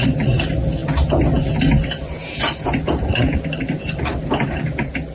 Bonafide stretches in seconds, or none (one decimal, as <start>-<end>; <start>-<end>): 0.0-5.1